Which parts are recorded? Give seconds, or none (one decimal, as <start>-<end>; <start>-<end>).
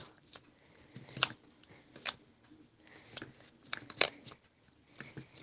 1.0-5.4